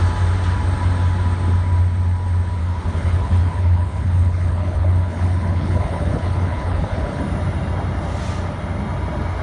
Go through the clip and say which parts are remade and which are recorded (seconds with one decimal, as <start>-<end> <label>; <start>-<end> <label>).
0.0-2.6 recorded; 2.6-7.2 remade; 7.2-9.4 recorded